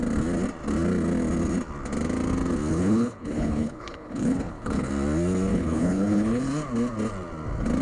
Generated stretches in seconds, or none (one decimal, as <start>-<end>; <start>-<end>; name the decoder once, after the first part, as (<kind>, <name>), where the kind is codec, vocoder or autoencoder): 2.7-4.9 (codec, HILCodec); 5.5-6.4